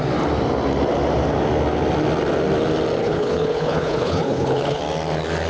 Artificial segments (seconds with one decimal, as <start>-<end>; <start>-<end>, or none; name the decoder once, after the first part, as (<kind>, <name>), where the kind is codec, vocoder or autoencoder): 3.0-4.8 (codec, HILCodec)